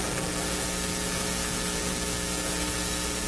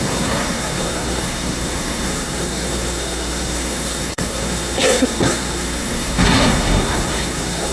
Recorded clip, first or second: first